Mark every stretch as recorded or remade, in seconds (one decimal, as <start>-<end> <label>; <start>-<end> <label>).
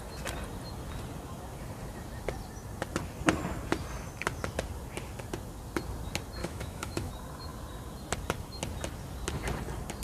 0.0-6.4 recorded; 6.4-7.1 remade; 7.1-10.0 recorded